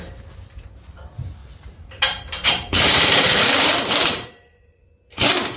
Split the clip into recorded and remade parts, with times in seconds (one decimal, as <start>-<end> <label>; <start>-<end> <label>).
0.0-1.4 recorded; 1.4-3.5 remade; 3.5-4.0 recorded; 4.0-4.8 remade; 4.8-5.6 recorded